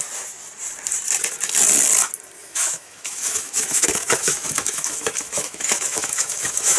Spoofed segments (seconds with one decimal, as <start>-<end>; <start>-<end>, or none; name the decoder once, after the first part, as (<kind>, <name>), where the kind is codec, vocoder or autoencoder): 2.4-6.8 (autoencoder, DAC-VAE)